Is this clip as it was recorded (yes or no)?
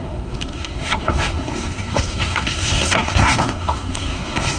no